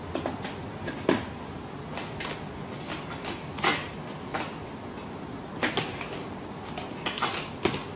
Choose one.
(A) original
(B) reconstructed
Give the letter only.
A